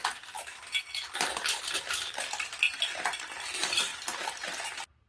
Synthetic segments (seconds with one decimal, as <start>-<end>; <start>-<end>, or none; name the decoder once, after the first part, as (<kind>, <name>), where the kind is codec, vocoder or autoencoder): none